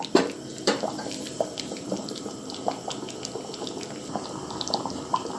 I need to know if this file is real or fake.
fake